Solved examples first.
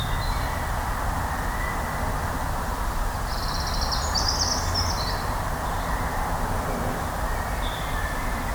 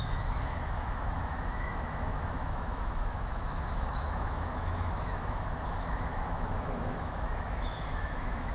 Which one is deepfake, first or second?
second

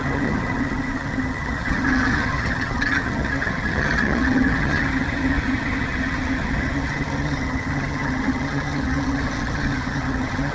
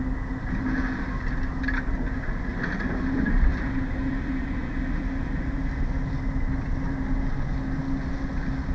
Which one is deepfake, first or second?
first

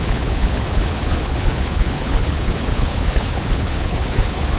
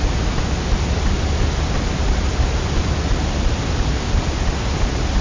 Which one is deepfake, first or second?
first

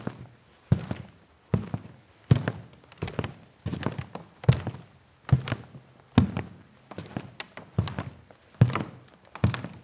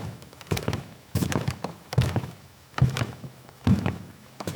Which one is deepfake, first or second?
second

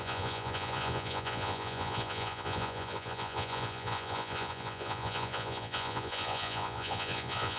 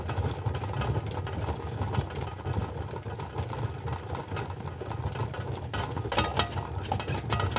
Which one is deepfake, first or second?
first